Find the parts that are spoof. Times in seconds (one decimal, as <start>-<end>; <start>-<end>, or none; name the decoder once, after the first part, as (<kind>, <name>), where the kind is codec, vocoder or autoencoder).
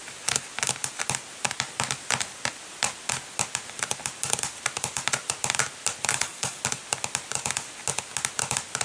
6.1-6.6 (codec, DAC)